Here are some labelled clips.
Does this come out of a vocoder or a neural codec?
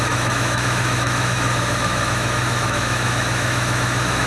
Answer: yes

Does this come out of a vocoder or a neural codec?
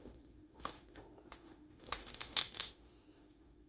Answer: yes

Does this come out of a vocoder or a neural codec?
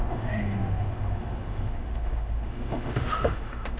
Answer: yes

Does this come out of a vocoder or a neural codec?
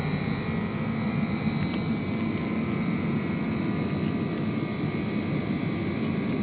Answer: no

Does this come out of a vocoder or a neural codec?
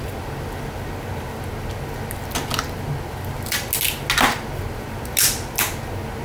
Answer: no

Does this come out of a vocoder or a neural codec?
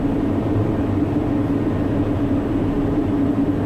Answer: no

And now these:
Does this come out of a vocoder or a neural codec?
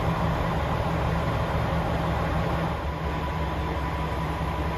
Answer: no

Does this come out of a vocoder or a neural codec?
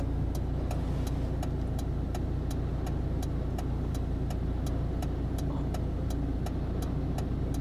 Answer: no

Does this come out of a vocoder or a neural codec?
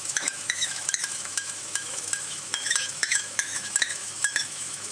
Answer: yes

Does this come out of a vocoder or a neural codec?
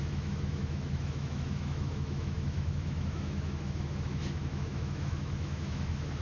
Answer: yes